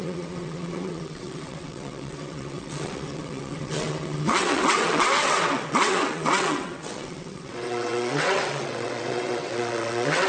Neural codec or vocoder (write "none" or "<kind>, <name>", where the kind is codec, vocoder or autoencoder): vocoder, WaveNeXt